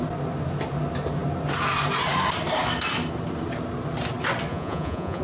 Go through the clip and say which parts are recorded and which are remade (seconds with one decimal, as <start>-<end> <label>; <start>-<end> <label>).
0.0-4.5 recorded; 4.5-5.2 remade